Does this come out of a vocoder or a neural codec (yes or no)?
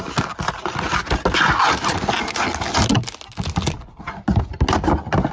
no